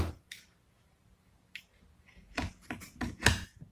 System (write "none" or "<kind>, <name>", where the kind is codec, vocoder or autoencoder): none